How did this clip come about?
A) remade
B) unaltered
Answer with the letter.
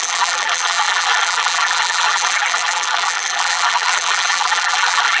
A